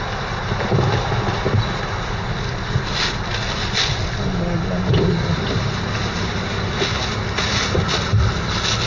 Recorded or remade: recorded